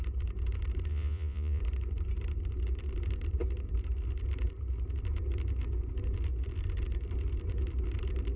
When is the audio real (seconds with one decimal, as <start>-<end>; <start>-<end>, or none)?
0.0-0.9; 1.6-8.4